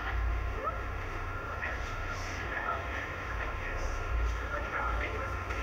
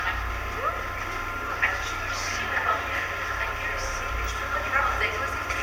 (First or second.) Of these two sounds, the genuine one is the second